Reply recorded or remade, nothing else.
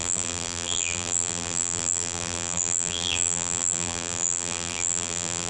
remade